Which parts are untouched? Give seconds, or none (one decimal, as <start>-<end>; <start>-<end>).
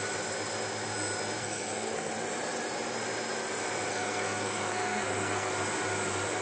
0.0-1.4; 2.1-3.9; 5.5-6.4